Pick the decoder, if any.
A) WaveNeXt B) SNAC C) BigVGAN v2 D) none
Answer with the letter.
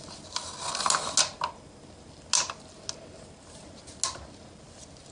D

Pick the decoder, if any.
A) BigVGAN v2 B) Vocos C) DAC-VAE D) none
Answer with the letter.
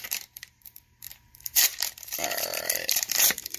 A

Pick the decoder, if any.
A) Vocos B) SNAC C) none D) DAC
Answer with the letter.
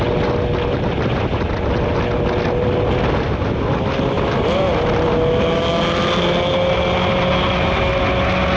C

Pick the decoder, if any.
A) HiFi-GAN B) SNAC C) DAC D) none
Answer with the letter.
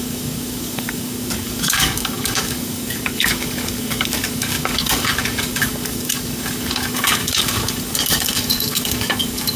C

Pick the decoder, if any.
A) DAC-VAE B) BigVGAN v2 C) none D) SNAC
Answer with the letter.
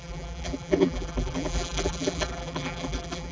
B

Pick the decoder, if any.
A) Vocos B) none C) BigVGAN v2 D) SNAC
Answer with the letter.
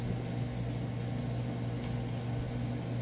B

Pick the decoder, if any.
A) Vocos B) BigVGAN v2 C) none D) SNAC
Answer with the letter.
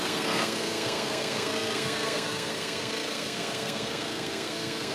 D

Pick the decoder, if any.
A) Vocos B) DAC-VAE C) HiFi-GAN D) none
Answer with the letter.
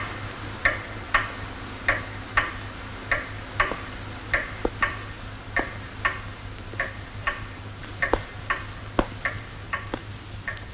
D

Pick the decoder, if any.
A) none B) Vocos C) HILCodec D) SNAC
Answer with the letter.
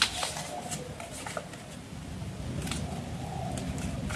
A